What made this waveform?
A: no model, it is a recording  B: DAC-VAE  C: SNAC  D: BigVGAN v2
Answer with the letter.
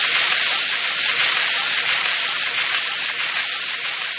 A